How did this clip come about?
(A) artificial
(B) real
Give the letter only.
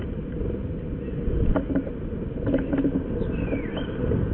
A